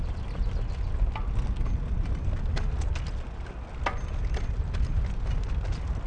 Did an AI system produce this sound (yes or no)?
no